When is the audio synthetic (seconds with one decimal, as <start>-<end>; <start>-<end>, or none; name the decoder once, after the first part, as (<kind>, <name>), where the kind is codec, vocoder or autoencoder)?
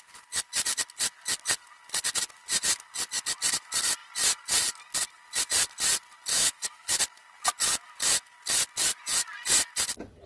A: 6.3-7.0 (autoencoder, DAC-VAE)